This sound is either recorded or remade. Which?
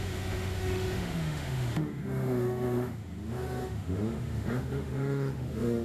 remade